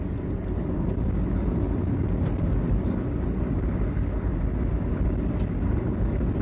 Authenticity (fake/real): real